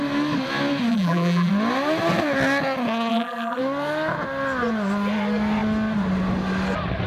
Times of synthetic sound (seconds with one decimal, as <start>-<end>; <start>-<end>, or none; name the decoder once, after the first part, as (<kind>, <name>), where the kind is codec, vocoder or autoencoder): 0.9-1.5 (vocoder, BigVGAN v2); 3.1-3.6